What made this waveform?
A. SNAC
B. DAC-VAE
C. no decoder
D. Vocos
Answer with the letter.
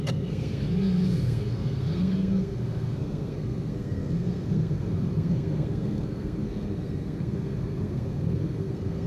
A